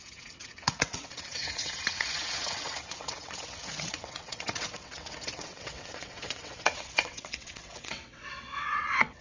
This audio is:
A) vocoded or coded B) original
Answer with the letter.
A